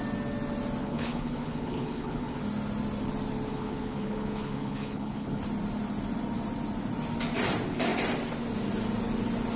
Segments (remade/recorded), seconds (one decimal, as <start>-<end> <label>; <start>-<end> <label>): 0.0-0.8 recorded; 0.8-2.4 remade; 2.4-3.5 recorded; 3.5-5.4 remade; 5.4-9.6 recorded